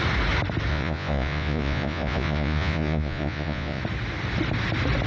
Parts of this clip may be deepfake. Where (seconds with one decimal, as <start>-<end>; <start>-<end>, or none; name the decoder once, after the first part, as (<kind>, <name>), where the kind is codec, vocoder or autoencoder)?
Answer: 0.7-3.8 (vocoder, Vocos)